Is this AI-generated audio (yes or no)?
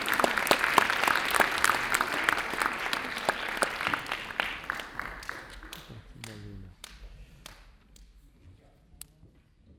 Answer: no